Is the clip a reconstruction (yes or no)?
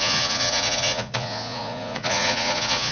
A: yes